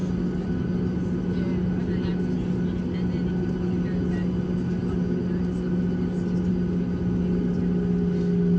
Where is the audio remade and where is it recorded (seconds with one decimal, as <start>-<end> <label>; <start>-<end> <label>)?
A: 0.0-8.6 recorded